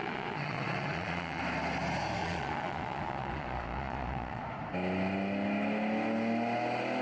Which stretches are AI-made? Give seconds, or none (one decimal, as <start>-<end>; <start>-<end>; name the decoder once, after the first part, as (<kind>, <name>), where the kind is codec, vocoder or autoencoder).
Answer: 0.0-1.4 (vocoder, Vocos); 2.2-4.4